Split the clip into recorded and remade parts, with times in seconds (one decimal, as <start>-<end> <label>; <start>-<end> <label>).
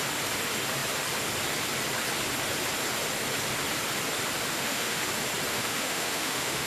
0.0-4.5 recorded; 4.5-5.1 remade; 5.1-5.5 recorded; 5.5-6.7 remade